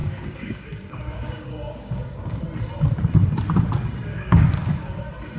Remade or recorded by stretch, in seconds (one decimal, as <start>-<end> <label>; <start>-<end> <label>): 0.0-2.4 remade; 2.4-4.1 recorded; 4.1-5.0 remade; 5.0-5.4 recorded